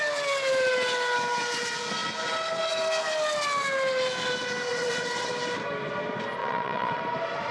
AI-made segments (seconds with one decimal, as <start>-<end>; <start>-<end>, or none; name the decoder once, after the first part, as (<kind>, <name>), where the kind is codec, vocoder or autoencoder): 4.7-5.3 (vocoder, WaveNeXt); 6.4-7.0